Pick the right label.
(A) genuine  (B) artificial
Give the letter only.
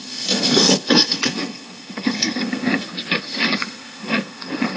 B